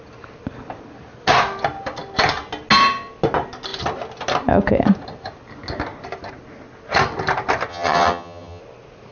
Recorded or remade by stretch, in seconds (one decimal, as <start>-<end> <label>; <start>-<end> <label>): 0.0-7.7 recorded; 7.7-8.6 remade; 8.6-9.1 recorded